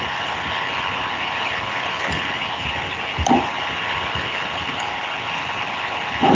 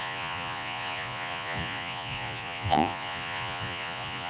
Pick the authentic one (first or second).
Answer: first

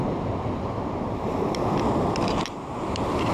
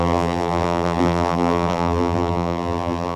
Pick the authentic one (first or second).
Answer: first